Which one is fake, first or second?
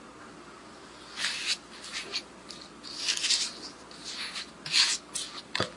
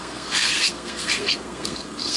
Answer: second